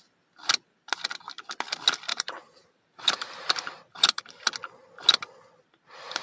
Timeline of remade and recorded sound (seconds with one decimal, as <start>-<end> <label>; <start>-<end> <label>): 0.0-2.1 recorded; 2.1-4.2 remade; 4.2-6.2 recorded